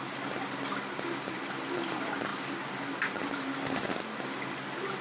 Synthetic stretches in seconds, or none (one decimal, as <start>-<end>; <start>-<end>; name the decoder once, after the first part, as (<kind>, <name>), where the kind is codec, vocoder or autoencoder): none